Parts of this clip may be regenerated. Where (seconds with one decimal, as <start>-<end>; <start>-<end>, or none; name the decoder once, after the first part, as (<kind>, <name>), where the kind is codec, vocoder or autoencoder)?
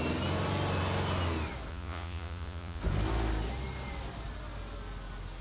1.7-2.8 (vocoder, Vocos)